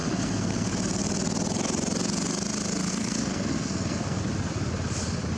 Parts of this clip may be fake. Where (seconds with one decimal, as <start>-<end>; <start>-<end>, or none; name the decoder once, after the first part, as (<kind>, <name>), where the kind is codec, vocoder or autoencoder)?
0.0-0.7 (codec, SNAC); 2.9-4.2

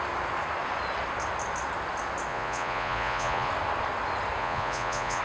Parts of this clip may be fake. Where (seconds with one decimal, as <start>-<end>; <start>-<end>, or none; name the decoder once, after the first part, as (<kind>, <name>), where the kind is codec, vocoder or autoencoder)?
2.3-3.5 (vocoder, Vocos); 4.4-5.2

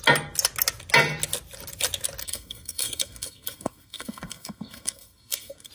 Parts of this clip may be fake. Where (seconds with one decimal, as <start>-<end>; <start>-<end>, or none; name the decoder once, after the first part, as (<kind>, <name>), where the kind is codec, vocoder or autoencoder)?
2.2-5.7 (codec, SNAC)

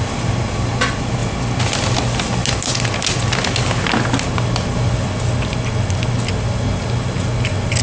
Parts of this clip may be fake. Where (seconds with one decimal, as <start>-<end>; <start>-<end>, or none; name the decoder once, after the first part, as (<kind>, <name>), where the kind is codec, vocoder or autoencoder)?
none